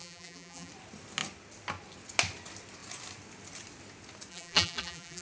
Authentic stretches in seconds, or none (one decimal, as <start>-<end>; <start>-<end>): 0.7-4.3